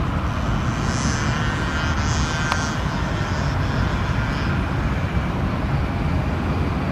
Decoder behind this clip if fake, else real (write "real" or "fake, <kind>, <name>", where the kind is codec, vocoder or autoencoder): real